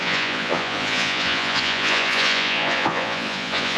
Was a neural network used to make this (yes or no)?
yes